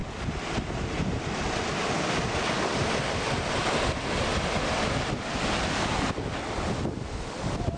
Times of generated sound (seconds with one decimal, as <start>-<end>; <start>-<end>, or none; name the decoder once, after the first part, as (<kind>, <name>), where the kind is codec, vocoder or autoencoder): none

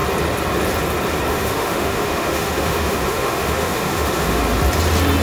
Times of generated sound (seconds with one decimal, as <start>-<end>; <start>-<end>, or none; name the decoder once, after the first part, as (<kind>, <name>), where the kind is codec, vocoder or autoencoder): 1.3-4.4 (autoencoder, DAC-VAE)

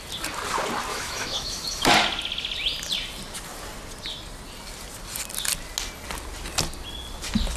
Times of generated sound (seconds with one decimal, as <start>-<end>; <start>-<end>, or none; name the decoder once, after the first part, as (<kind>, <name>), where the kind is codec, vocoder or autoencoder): 0.9-1.9 (autoencoder, DAC-VAE)

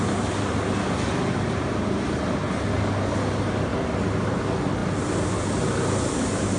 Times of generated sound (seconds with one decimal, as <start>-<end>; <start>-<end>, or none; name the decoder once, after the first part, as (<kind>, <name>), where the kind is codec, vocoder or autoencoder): none

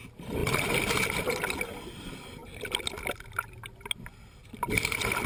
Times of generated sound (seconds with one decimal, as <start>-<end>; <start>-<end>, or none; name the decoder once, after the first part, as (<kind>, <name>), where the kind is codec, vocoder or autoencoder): none

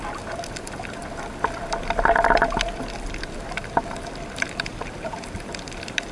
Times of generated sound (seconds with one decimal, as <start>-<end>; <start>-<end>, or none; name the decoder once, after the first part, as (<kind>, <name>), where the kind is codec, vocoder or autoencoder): none